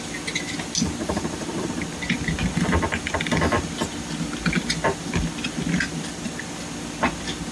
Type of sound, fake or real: real